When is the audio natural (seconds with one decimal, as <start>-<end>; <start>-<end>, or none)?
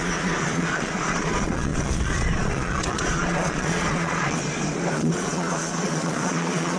4.4-4.9